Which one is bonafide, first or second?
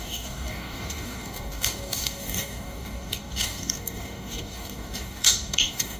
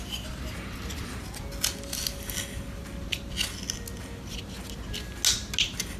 second